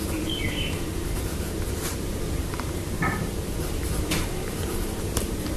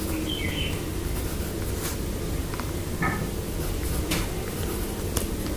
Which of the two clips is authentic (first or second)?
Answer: second